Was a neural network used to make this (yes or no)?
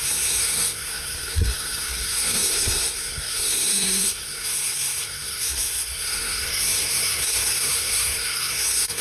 yes